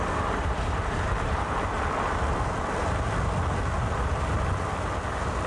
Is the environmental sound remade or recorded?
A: recorded